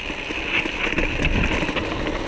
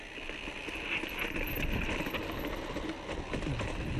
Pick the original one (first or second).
second